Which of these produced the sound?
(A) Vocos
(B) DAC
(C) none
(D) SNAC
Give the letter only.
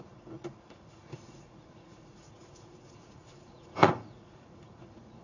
A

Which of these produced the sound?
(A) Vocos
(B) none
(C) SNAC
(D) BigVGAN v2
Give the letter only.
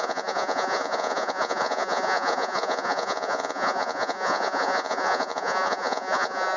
A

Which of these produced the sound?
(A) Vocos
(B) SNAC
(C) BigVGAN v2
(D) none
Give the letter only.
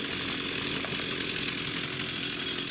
D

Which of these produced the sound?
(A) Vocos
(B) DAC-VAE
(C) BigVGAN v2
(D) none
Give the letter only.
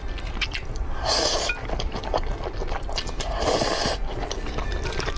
D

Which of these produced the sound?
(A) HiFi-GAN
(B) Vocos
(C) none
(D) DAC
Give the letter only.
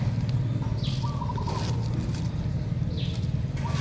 C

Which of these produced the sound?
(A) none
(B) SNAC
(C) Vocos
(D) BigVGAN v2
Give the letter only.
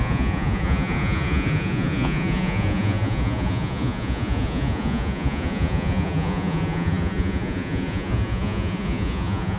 C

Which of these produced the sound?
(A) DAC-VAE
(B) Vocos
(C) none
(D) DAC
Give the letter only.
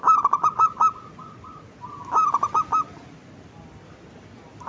C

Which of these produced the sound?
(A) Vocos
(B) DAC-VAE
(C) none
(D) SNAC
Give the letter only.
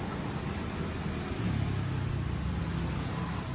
C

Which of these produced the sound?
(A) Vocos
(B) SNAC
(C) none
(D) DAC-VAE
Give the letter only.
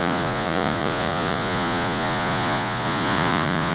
A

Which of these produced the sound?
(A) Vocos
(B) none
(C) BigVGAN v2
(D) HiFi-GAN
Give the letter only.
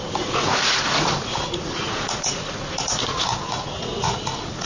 A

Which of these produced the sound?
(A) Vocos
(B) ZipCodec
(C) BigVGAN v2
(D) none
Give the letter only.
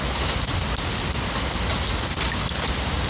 D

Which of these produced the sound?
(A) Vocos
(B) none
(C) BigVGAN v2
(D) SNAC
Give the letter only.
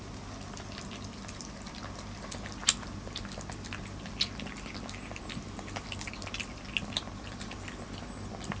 B